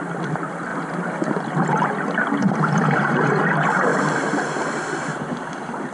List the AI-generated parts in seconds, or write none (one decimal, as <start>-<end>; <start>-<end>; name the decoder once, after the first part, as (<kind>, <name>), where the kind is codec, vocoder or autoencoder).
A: 2.4-3.4 (vocoder, BigVGAN v2); 3.9-4.6; 5.1-5.9

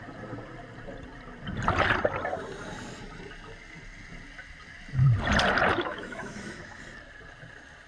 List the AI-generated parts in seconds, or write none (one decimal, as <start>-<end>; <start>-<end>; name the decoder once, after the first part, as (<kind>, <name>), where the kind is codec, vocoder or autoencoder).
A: 5.7-6.8 (autoencoder, DAC-VAE)

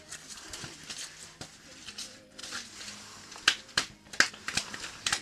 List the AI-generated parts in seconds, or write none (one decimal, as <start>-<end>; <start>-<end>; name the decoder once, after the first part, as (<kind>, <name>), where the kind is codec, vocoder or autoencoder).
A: none

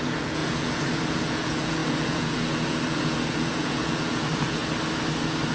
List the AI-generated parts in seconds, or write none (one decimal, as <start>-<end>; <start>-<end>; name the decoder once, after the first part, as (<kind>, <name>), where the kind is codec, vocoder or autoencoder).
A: 0.0-4.6 (vocoder, Vocos)

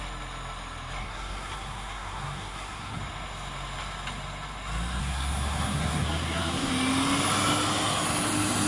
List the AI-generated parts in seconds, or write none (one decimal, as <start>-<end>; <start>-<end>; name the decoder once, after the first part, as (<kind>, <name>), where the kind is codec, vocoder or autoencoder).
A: 1.0-3.0 (codec, SNAC); 5.0-6.7

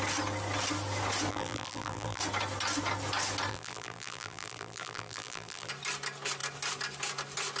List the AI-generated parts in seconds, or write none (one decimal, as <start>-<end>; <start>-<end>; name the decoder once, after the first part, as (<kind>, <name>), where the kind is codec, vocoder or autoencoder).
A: 1.3-2.2 (vocoder, BigVGAN v2); 3.5-5.7